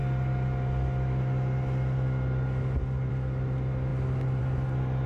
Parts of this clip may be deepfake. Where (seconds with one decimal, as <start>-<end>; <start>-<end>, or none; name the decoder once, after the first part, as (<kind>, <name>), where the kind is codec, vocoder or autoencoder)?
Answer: none

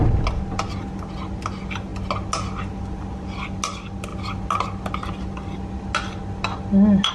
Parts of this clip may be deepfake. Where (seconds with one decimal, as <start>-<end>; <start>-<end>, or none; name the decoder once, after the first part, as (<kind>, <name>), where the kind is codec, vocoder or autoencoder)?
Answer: none

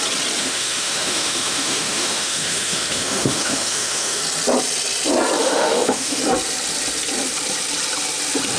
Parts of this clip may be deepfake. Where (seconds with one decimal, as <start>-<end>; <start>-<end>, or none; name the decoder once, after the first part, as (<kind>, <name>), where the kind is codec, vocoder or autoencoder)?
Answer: 0.4-4.2 (autoencoder, DAC-VAE); 5.4-6.2

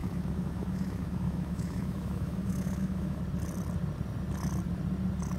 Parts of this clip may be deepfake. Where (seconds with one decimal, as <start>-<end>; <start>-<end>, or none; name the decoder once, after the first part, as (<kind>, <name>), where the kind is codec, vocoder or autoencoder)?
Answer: 0.0-3.2 (autoencoder, DAC-VAE)

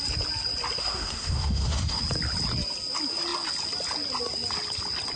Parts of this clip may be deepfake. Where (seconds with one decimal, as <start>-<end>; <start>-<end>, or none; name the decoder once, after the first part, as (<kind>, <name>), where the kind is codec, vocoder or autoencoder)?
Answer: 0.8-2.0 (autoencoder, DAC-VAE)